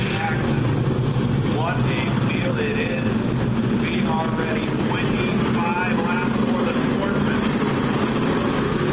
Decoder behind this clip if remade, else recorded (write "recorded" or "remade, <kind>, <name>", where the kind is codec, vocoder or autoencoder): recorded